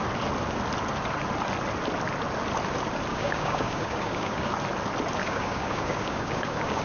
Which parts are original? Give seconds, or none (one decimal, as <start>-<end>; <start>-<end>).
0.0-3.1; 4.5-5.2